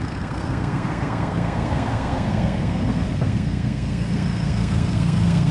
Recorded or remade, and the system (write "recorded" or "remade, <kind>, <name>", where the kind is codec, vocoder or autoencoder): remade, codec, SNAC